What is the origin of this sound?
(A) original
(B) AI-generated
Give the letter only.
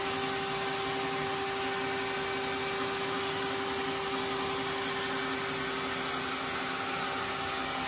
A